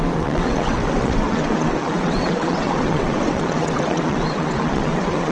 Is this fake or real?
fake